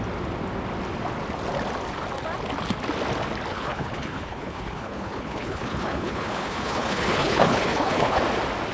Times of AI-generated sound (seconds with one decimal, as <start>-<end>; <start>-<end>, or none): 3.5-8.2